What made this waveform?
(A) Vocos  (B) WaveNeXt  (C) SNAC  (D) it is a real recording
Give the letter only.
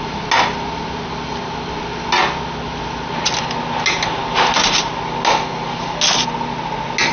D